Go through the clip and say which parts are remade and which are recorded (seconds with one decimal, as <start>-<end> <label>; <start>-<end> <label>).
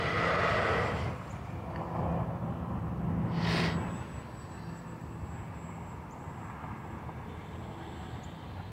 0.0-8.7 recorded